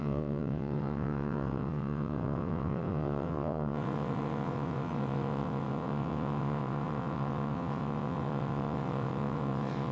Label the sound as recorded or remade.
remade